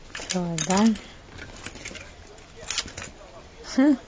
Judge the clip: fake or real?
real